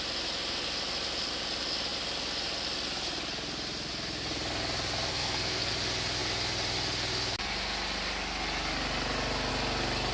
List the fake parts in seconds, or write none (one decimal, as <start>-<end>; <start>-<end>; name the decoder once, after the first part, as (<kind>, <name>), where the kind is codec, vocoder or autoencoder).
5.1-5.7 (codec, SNAC)